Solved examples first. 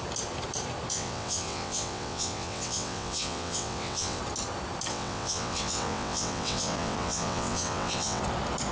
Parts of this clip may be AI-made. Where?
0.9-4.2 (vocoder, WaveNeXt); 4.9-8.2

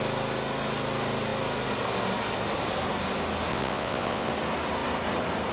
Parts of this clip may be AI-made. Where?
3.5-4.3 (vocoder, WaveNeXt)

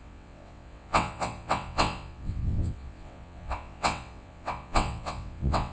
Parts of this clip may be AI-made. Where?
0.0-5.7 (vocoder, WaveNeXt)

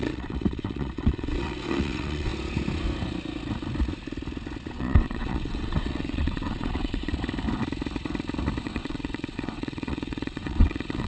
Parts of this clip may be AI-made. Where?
0.0-2.3 (vocoder, WaveNeXt); 4.7-7.1; 8.6-11.1

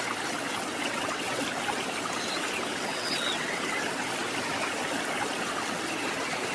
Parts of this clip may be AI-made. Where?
0.8-1.4 (vocoder, WaveNeXt); 2.9-3.6